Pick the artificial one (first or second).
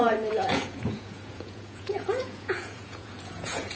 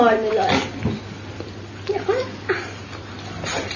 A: first